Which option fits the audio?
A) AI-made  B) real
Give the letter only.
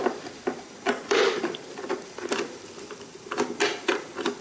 A